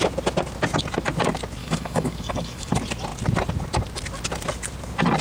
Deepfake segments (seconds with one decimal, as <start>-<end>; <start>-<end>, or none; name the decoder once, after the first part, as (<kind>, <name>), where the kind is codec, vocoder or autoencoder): 1.6-2.7 (codec, DAC)